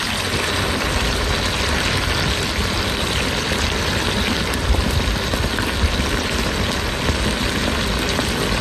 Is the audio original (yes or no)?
yes